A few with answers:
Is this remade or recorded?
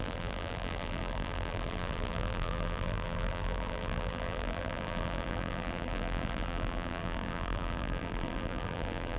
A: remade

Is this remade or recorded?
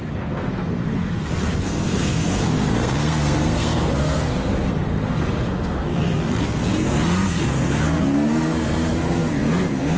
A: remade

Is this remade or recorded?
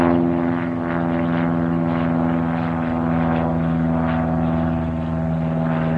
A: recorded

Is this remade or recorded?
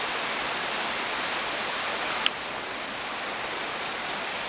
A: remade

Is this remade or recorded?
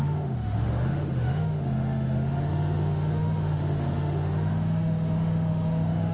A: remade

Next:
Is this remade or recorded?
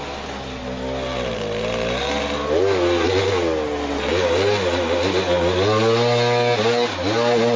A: recorded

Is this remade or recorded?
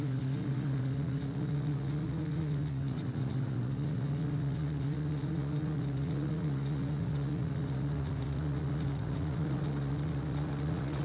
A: remade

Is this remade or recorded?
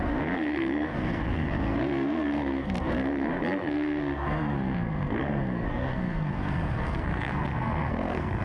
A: remade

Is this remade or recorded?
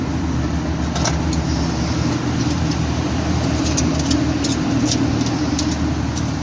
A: recorded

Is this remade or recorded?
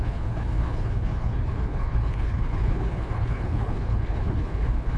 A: remade